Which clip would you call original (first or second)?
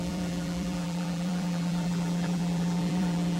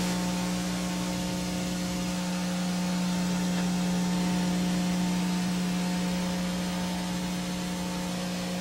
second